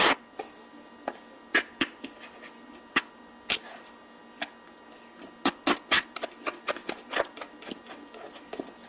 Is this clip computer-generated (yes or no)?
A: no